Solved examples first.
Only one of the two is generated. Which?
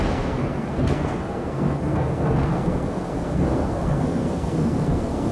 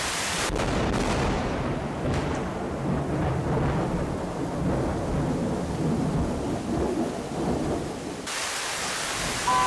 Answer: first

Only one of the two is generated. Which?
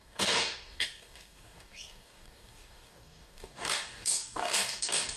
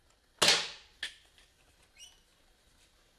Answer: first